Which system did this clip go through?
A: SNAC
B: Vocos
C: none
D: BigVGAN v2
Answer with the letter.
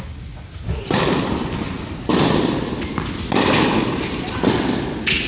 C